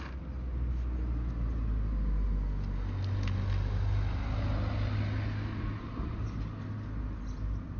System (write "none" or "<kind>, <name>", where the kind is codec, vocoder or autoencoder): none